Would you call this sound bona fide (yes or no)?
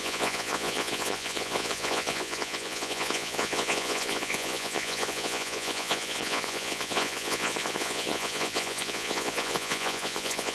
no